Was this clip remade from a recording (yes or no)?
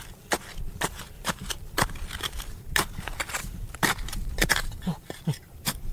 yes